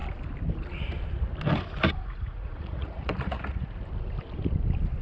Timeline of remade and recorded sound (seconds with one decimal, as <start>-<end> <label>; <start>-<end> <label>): 0.0-2.0 recorded; 2.0-3.8 remade; 3.8-5.0 recorded